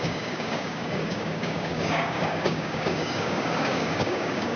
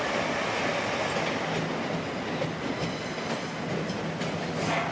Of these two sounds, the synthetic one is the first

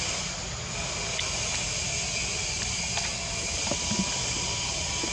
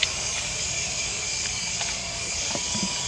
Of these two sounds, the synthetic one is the second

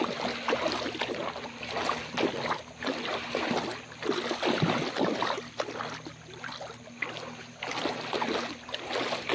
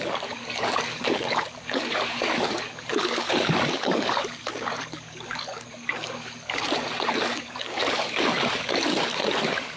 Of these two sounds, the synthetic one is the second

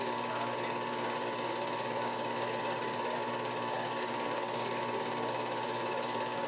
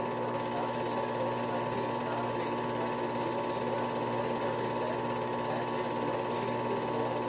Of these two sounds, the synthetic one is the first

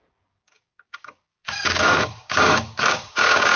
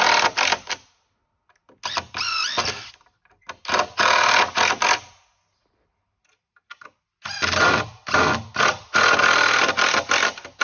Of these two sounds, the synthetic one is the first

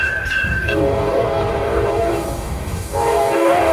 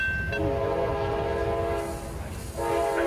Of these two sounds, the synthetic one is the first